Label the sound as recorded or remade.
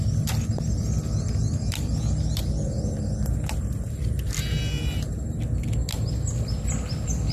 recorded